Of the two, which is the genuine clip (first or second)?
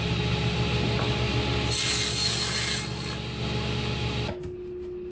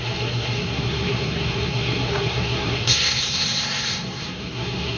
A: first